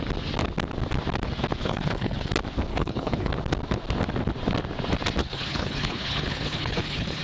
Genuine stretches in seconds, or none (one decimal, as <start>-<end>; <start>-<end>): 0.0-1.6; 2.3-2.7; 3.3-5.2